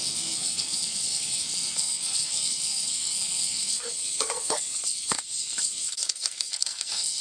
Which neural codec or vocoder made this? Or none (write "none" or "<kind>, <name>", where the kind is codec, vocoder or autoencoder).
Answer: codec, SNAC